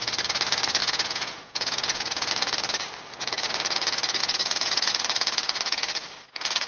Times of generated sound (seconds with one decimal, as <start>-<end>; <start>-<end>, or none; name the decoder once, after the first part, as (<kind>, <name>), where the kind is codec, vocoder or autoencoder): 0.8-2.3 (vocoder, Vocos); 4.2-4.9